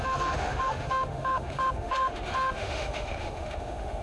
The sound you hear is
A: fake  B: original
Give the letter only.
A